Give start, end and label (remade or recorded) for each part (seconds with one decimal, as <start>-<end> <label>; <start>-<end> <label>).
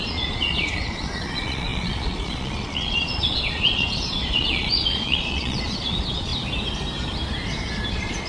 0.0-6.3 remade; 6.3-7.9 recorded; 7.9-8.3 remade